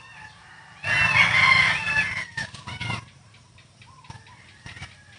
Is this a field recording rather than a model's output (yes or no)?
yes